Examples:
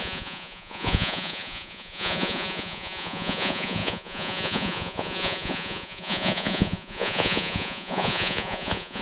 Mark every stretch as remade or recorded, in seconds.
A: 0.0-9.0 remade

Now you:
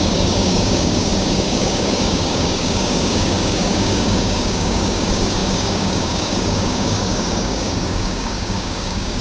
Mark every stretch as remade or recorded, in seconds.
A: 0.0-9.2 remade

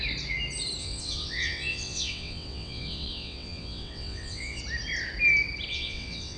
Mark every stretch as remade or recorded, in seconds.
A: 0.0-0.8 recorded; 0.8-4.6 remade; 4.6-5.7 recorded; 5.7-6.4 remade

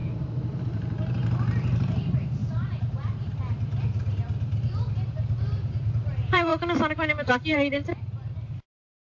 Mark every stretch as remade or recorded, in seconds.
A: 0.0-0.6 recorded; 0.6-6.5 remade; 6.5-7.3 recorded; 7.3-9.0 remade

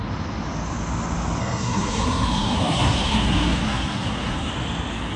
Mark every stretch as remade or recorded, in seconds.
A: 0.0-1.4 recorded; 1.4-4.5 remade; 4.5-5.2 recorded